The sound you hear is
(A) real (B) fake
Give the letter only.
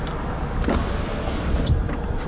A